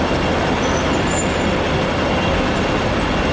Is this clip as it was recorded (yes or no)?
yes